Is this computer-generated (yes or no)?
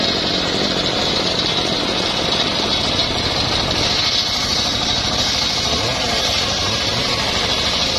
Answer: no